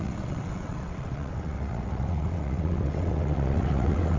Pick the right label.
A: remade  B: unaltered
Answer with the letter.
A